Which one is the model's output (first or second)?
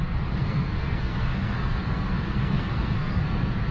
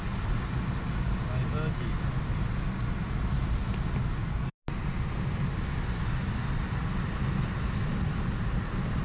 first